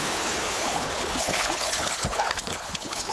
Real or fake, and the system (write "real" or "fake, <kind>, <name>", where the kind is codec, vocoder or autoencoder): fake, codec, HILCodec